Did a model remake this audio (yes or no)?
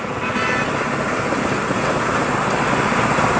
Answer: no